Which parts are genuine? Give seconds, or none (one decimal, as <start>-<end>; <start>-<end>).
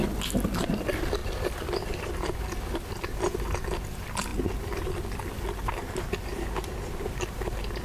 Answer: 0.0-1.2; 2.1-7.8